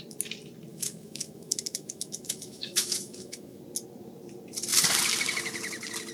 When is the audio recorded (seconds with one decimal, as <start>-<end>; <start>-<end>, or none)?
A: 0.0-0.7; 3.6-6.1